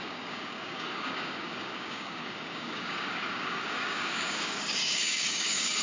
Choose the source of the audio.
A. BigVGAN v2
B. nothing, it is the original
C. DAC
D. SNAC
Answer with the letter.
C